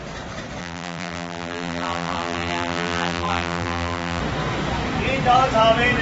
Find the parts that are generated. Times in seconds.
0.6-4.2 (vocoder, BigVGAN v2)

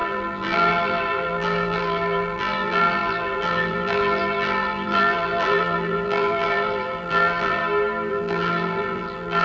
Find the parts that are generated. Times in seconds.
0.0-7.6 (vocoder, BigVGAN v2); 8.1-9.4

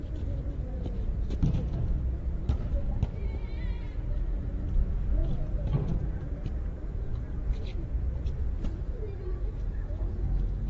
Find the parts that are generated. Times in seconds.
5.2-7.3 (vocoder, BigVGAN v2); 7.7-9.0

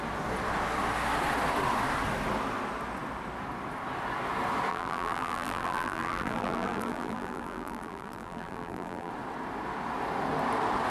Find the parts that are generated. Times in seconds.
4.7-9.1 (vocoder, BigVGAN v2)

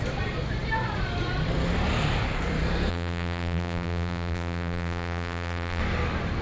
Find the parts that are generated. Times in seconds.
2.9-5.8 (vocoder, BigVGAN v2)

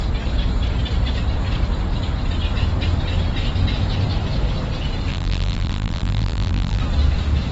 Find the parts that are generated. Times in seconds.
5.1-6.8 (vocoder, BigVGAN v2)